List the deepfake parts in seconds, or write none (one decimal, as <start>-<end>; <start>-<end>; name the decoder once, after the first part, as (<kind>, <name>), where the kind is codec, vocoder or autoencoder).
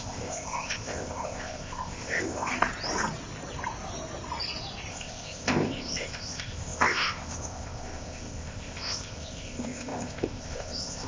0.0-2.5 (codec, ZipCodec); 4.9-11.1